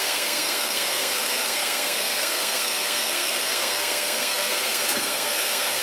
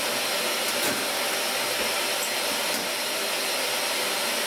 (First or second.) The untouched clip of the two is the second